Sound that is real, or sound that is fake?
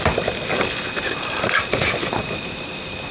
real